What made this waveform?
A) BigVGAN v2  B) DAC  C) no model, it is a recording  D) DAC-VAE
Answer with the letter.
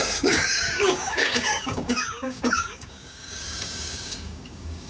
B